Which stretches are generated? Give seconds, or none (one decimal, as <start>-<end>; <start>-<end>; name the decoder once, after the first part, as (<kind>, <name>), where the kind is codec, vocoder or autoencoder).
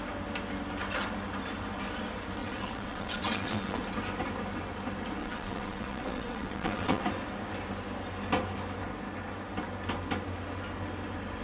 2.4-3.8 (vocoder, WaveNeXt); 5.2-7.0